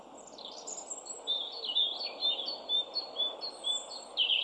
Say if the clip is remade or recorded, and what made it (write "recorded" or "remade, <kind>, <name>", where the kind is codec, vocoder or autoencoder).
recorded